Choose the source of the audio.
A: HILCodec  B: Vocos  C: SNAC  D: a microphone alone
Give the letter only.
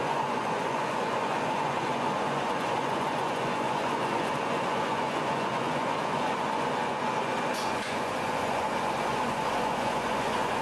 B